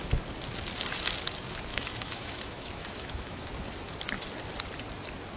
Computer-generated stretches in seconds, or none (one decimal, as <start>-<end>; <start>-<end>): 1.7-3.5